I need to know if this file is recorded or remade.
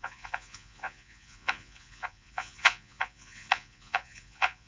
remade